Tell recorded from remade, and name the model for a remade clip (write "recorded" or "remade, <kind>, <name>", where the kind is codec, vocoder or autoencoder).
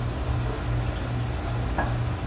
recorded